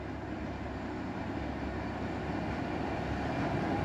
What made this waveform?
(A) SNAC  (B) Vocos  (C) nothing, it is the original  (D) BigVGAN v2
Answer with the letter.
C